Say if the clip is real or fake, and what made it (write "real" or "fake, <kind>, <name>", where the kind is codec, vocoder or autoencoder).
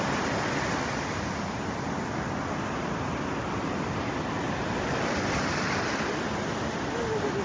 real